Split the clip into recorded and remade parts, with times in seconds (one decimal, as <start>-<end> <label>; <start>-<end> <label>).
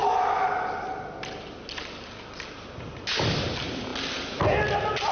0.0-5.1 recorded